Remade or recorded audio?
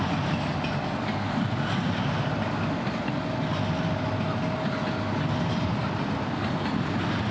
recorded